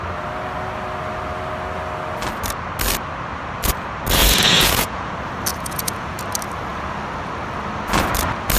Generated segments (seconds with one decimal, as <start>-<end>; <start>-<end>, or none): 4.2-5.1; 5.5-6.2